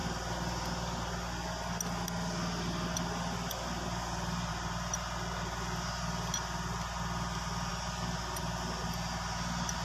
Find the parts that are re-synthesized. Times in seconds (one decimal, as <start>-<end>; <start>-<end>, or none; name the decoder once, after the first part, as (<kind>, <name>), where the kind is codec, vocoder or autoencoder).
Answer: none